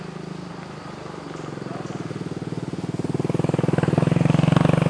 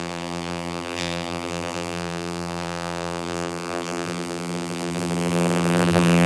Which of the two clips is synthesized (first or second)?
second